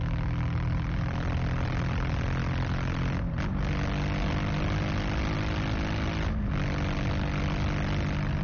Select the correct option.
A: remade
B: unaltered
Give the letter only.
B